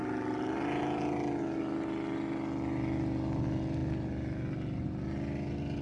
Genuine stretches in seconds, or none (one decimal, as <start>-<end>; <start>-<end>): 0.0-5.8